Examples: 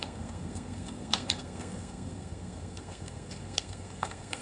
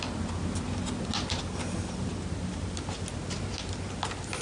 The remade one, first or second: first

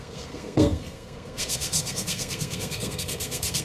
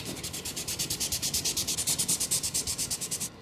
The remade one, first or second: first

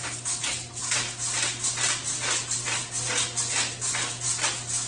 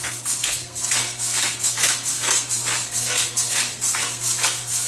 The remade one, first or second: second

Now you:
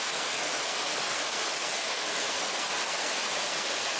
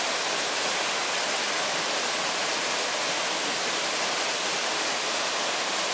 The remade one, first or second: first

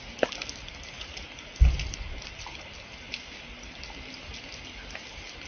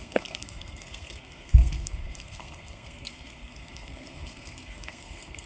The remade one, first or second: second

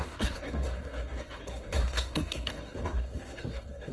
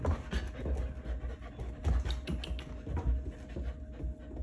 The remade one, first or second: first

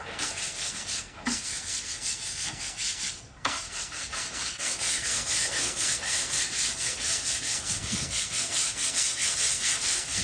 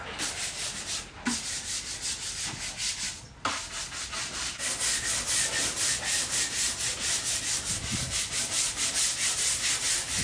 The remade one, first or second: first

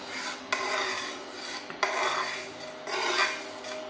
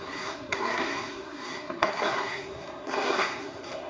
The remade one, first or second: second